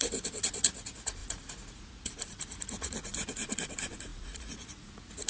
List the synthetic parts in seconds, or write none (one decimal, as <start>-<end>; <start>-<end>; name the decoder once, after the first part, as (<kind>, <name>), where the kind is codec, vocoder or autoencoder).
0.0-5.3 (vocoder, Vocos)